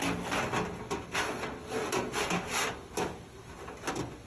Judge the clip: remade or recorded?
recorded